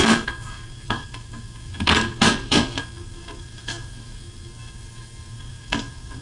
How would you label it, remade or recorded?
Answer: remade